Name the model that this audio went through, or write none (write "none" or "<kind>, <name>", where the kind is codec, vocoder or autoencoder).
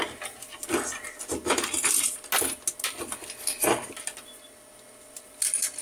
none